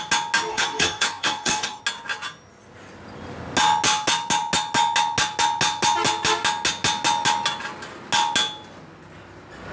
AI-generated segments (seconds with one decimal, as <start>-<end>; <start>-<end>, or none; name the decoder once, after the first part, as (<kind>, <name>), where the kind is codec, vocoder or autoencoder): 0.5-1.8 (codec, DAC)